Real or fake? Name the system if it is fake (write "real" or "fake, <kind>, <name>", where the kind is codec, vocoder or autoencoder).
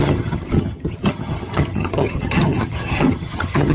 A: fake, vocoder, HiFi-GAN